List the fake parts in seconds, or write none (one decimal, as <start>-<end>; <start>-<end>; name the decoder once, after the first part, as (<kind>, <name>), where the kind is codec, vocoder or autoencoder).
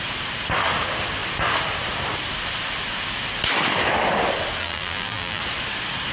4.6-5.4 (vocoder, BigVGAN v2)